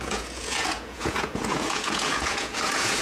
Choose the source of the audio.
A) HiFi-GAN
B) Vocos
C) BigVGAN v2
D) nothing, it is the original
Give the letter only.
B